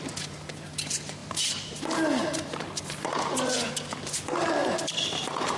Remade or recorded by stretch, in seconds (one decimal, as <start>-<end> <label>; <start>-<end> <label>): 0.0-1.2 recorded; 1.2-2.8 remade; 2.8-4.6 recorded; 4.6-5.6 remade